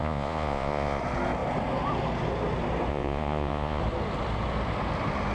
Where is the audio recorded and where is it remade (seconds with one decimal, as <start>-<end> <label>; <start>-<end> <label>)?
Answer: 0.0-1.0 remade; 1.0-2.9 recorded; 2.9-3.8 remade; 3.8-5.3 recorded